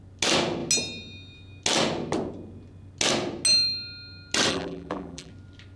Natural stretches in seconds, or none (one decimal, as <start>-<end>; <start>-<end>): 0.0-4.5; 5.3-5.8